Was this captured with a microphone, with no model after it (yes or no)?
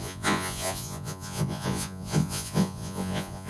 no